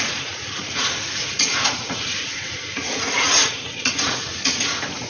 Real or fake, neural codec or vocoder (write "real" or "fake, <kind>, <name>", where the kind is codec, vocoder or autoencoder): fake, vocoder, Vocos